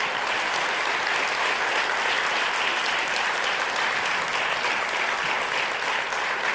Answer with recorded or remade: recorded